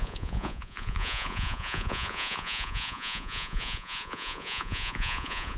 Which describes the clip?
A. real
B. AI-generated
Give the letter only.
B